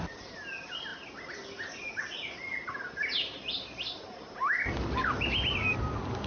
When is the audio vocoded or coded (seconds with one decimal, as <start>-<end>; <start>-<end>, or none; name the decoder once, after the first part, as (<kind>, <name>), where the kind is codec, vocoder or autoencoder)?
none